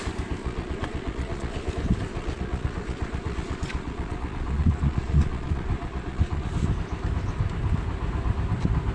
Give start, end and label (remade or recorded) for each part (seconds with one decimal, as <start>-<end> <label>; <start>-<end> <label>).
0.0-0.4 recorded; 0.4-1.7 remade; 1.7-2.1 recorded; 2.1-6.5 remade; 6.5-8.9 recorded